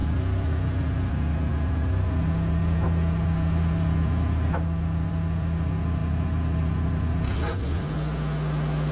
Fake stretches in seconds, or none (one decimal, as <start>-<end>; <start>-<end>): none